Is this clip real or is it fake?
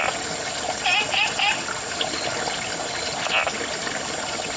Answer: real